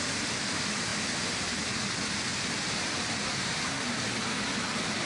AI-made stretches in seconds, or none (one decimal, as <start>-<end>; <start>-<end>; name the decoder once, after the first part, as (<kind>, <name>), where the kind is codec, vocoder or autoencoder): none